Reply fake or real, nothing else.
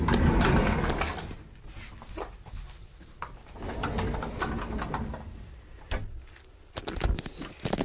real